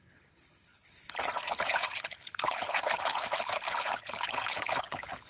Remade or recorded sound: remade